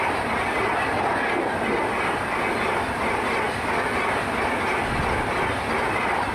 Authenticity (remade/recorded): recorded